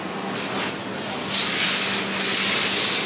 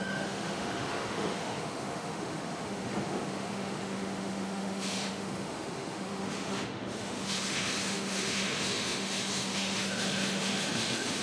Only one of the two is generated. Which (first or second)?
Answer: second